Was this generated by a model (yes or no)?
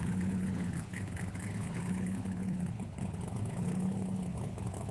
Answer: yes